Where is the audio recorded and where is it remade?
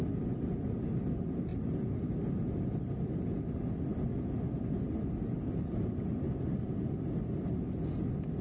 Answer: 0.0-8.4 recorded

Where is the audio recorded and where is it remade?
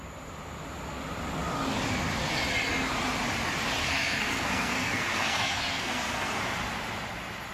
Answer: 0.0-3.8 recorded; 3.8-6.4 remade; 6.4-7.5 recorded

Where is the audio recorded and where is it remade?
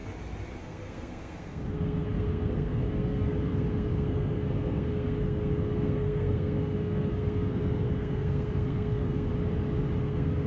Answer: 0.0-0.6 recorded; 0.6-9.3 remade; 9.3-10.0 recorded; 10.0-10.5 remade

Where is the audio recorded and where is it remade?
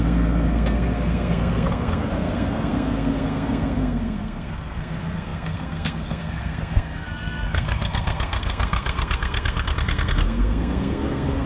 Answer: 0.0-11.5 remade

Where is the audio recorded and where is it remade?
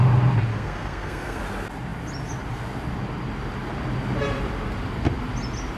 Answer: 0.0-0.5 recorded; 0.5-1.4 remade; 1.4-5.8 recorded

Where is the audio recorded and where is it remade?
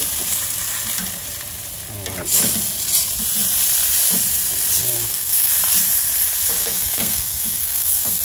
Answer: 0.0-4.8 recorded; 4.8-5.5 remade; 5.5-6.6 recorded; 6.6-8.2 remade